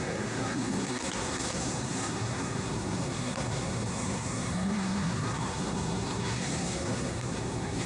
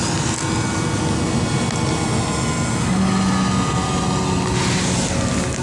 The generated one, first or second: first